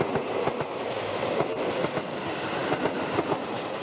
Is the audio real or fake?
real